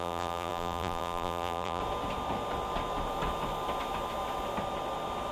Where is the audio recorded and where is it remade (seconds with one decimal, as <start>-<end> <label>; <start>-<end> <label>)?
0.0-1.8 remade; 1.8-5.3 recorded